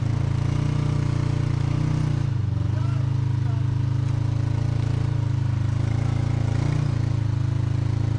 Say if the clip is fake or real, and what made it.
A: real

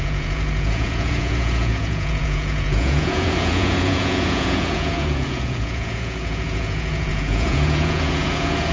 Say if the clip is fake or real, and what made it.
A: fake, vocoder, Vocos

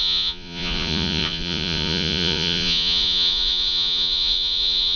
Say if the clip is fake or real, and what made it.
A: fake, vocoder, Vocos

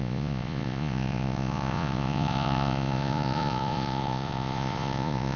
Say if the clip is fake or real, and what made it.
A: fake, vocoder, Vocos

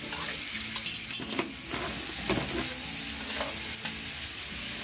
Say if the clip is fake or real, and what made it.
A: real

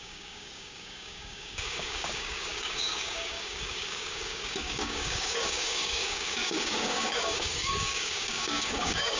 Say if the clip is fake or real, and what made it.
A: fake, codec, DAC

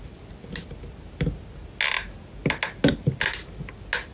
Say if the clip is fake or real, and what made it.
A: real